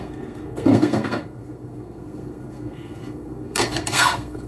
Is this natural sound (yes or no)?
no